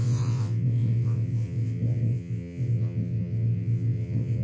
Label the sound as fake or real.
fake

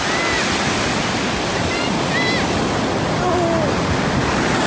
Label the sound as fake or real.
real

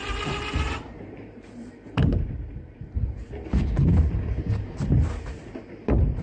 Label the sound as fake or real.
fake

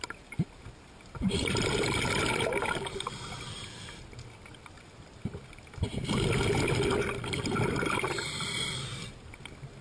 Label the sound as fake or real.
real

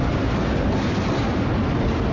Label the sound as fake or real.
real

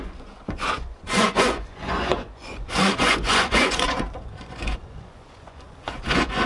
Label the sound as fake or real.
fake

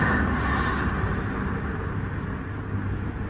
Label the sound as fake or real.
real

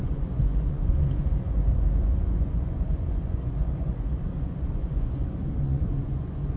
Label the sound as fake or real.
fake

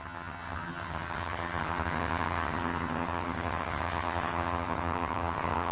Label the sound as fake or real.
fake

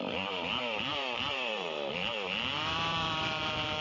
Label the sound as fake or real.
fake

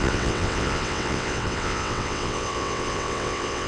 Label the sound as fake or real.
fake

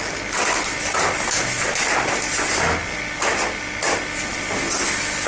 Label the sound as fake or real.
real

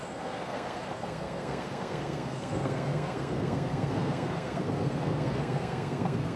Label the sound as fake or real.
fake